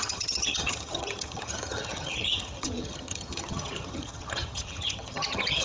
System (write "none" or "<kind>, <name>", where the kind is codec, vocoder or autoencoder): vocoder, HiFi-GAN